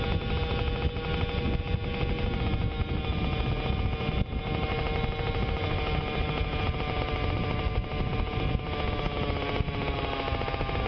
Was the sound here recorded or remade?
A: recorded